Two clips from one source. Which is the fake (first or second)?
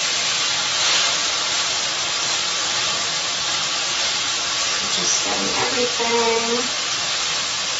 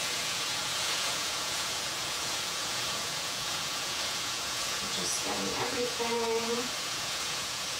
second